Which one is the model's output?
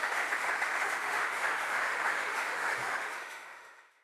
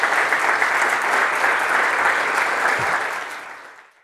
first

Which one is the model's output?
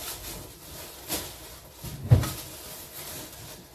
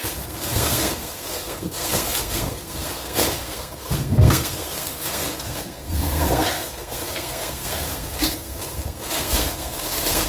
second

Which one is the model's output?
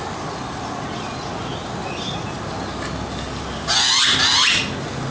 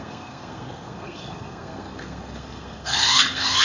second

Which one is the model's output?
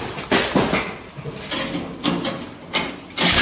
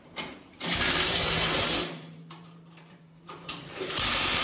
second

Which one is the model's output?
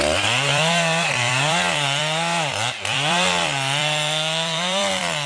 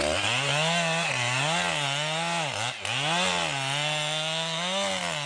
first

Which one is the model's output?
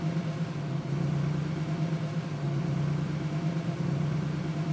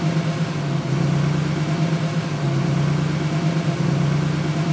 first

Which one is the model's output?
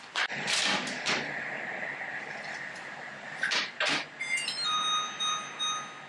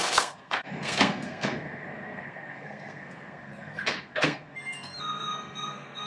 second